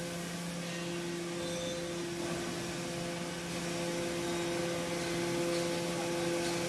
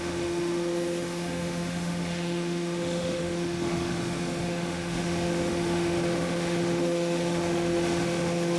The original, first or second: first